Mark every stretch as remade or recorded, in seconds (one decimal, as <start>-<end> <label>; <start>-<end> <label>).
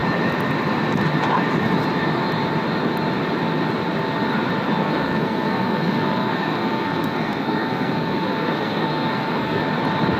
0.0-4.8 recorded; 4.8-9.6 remade; 9.6-10.2 recorded